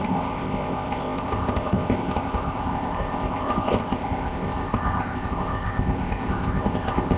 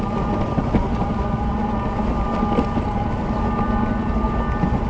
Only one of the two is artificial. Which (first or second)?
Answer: first